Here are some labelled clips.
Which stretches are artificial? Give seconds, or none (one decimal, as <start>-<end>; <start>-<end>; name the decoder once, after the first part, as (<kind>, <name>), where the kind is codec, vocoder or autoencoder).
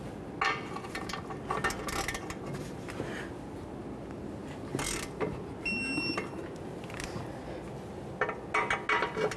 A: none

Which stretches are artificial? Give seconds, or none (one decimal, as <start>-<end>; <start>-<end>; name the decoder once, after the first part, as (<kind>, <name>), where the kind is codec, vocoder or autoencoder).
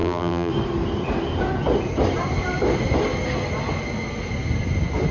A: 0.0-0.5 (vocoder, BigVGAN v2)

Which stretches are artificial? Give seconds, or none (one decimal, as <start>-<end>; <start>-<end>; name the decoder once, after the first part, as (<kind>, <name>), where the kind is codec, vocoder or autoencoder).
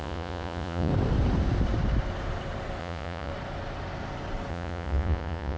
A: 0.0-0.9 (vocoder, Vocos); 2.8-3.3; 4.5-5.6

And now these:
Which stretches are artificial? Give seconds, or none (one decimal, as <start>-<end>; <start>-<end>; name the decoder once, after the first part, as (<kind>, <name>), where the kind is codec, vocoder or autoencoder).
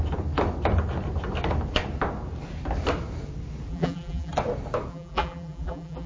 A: 3.7-4.3 (vocoder, BigVGAN v2); 4.9-6.1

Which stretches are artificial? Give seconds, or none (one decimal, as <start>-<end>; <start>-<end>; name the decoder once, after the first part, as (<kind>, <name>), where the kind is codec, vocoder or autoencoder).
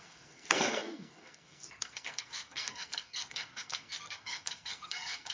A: 0.0-5.3 (codec, SNAC)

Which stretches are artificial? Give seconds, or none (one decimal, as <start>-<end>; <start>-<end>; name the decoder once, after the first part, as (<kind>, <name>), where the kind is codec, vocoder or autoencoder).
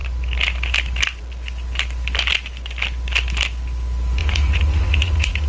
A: 4.2-5.5 (vocoder, Vocos)